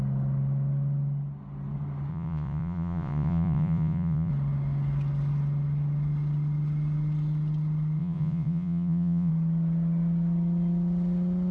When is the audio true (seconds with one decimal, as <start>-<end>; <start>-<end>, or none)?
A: 0.0-2.1; 4.3-8.0; 9.3-11.5